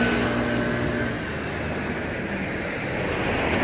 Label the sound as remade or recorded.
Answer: recorded